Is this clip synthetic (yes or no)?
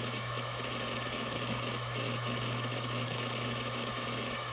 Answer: yes